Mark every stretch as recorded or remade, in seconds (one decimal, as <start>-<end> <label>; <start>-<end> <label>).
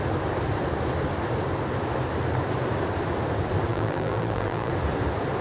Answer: 0.0-3.7 recorded; 3.7-4.7 remade; 4.7-5.4 recorded